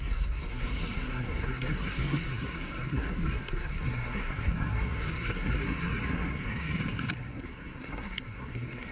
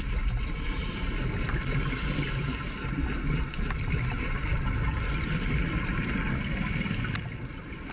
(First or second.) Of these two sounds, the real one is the second